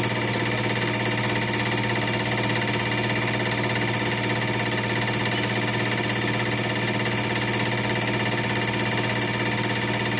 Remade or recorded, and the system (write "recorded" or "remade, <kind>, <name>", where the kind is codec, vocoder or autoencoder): recorded